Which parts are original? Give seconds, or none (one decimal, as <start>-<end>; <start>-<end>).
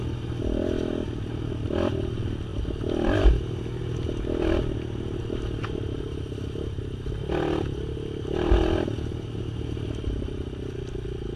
0.0-11.4